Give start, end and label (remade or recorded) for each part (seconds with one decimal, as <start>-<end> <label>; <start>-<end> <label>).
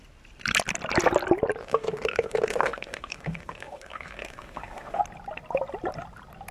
0.0-1.6 recorded; 1.6-5.0 remade; 5.0-6.5 recorded